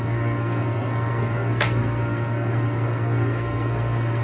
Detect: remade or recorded remade